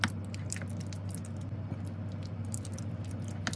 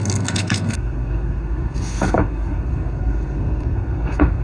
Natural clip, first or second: first